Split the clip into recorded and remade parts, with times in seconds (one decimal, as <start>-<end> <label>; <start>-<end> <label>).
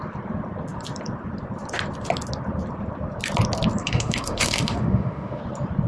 0.0-3.8 recorded; 3.8-5.4 remade; 5.4-5.9 recorded